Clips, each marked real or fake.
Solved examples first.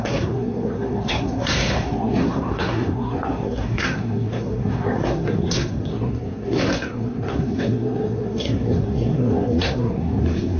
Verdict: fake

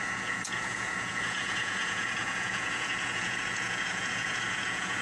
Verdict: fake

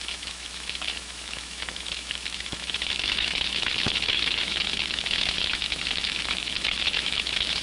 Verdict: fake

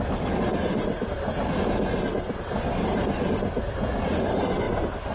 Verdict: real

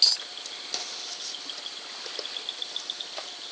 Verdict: real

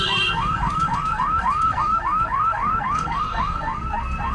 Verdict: fake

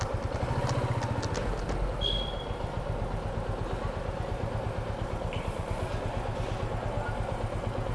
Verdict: real